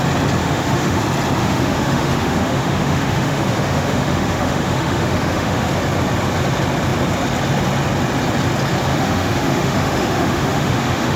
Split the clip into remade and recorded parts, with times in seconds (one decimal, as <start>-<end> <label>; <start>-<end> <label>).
0.0-0.4 recorded; 0.4-1.0 remade; 1.0-1.4 recorded; 1.4-5.7 remade; 5.7-8.9 recorded; 8.9-11.2 remade